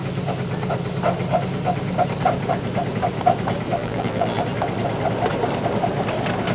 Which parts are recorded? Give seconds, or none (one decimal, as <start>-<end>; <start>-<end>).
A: 0.0-3.8; 4.4-6.5